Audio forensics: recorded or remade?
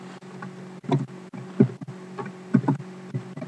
recorded